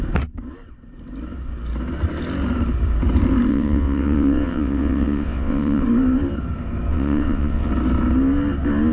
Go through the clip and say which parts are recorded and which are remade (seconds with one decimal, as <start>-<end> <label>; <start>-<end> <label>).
0.0-3.5 recorded; 3.5-5.8 remade; 5.8-6.9 recorded; 6.9-7.7 remade; 7.7-8.9 recorded